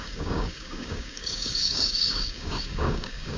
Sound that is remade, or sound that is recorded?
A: remade